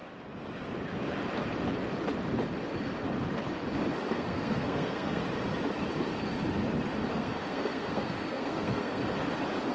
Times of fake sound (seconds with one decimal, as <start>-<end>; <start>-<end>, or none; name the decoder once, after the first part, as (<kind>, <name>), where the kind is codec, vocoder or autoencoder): 4.1-5.2 (codec, SNAC); 7.1-9.0